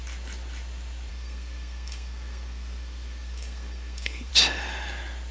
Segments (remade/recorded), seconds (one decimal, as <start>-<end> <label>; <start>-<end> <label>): 0.0-1.1 recorded; 1.1-4.3 remade; 4.3-5.3 recorded